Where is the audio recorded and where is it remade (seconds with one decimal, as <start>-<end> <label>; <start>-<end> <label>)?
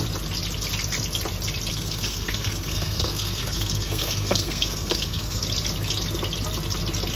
0.0-1.7 recorded; 1.7-5.4 remade; 5.4-7.2 recorded